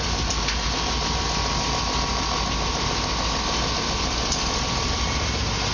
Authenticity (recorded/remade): recorded